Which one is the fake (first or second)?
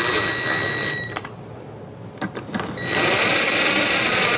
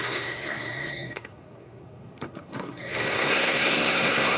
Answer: second